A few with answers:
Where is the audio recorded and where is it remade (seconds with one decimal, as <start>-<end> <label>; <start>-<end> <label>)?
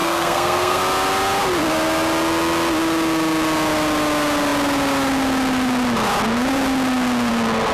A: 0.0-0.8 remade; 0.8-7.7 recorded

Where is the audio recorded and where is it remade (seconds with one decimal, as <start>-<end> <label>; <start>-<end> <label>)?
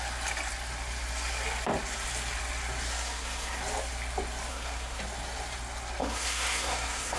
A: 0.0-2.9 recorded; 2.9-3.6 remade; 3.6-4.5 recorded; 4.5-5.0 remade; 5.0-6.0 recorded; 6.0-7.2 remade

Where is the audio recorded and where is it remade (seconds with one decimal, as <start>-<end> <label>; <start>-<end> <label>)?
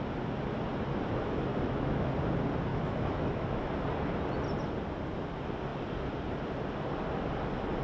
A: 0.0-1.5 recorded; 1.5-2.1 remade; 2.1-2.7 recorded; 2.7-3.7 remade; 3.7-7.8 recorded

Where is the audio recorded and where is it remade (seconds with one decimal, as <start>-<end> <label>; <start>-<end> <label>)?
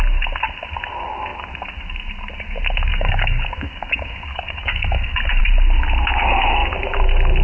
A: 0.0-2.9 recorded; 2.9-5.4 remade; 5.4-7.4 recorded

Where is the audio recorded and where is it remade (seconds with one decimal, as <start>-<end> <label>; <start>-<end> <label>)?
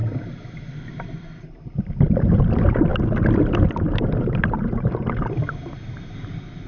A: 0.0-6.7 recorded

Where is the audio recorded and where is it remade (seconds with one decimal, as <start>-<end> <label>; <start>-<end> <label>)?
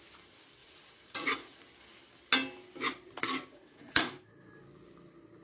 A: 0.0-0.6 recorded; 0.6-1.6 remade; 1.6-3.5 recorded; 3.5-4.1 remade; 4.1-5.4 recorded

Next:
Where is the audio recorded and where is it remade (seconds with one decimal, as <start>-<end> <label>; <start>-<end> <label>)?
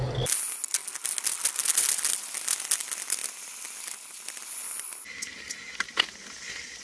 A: 0.0-6.8 recorded